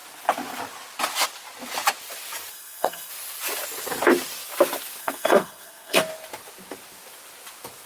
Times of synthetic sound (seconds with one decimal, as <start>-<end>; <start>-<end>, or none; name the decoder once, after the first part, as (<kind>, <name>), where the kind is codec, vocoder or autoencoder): 2.5-3.1 (codec, SNAC); 5.0-6.0